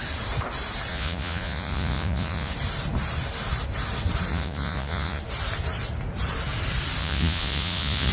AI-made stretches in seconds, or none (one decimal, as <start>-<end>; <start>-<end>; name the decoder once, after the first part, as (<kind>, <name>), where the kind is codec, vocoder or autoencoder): 0.9-2.5 (vocoder, Vocos); 4.3-5.2; 7.0-8.1